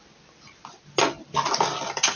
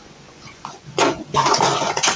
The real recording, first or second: first